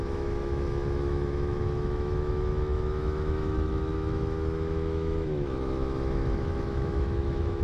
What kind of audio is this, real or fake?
fake